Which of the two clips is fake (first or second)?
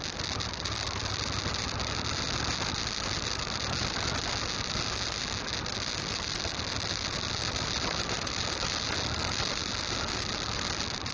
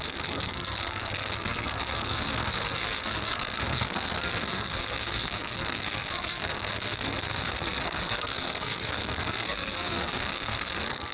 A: second